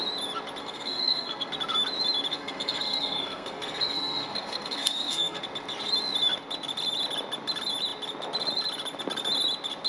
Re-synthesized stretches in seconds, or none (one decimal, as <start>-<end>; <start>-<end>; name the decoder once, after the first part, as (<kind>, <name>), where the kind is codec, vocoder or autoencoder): 0.6-1.5 (codec, SNAC); 2.3-5.4

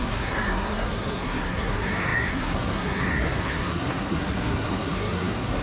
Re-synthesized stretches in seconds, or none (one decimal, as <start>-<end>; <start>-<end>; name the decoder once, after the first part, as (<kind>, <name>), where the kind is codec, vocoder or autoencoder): 0.0-5.6 (codec, SNAC)

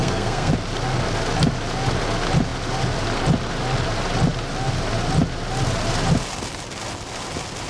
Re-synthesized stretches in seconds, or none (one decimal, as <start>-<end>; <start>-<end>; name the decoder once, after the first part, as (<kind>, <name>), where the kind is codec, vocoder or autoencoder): 0.0-0.5 (codec, SNAC)

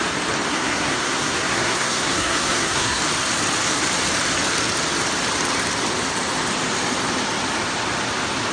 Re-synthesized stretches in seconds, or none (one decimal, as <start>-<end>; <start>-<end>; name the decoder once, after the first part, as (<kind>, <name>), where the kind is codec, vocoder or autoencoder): 0.5-3.0 (codec, SNAC)

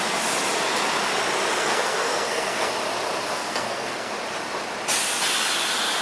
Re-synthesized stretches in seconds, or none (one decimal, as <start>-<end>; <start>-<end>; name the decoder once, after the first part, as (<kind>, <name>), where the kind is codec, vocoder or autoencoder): 1.5-2.7 (codec, SNAC); 3.3-4.1

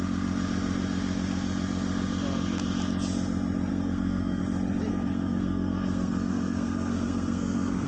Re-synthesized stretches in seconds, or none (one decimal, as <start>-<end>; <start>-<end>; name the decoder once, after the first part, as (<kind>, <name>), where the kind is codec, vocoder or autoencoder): 3.7-4.4 (codec, SNAC); 4.9-7.9

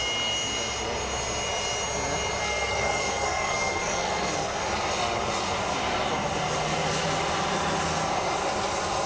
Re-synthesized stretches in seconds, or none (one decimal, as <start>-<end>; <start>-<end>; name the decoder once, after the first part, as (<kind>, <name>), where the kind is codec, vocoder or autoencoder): 2.4-4.6 (codec, SNAC)